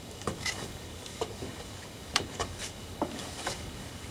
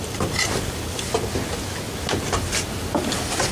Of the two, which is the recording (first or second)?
second